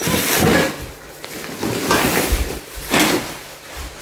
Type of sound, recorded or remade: recorded